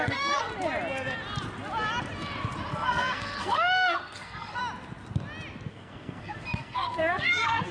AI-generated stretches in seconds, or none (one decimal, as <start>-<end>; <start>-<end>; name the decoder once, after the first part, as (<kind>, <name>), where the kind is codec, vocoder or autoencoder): 0.0-0.5 (codec, SNAC); 2.7-4.6; 5.7-7.7